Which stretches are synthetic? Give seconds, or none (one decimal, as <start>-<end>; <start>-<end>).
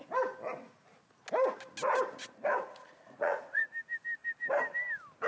2.7-3.6